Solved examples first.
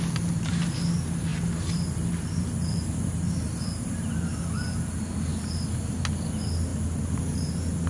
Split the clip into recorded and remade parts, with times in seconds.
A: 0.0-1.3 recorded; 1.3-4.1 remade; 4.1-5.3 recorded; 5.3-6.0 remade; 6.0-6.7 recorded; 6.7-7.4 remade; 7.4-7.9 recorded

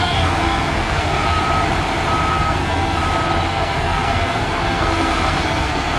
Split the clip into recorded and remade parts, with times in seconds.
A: 0.0-1.4 remade; 1.4-2.3 recorded; 2.3-3.0 remade; 3.0-3.5 recorded; 3.5-6.0 remade

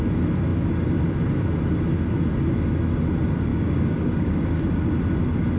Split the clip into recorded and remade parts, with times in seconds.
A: 0.0-3.5 recorded; 3.5-4.7 remade; 4.7-5.6 recorded

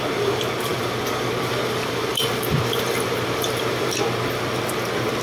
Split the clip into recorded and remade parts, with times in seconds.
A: 0.0-0.7 recorded; 0.7-3.8 remade; 3.8-5.2 recorded